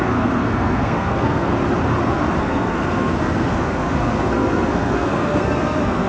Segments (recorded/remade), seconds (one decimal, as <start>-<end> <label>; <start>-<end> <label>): 0.0-1.5 remade; 1.5-2.4 recorded; 2.4-6.1 remade